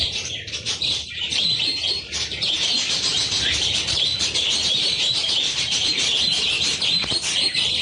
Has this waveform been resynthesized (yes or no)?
yes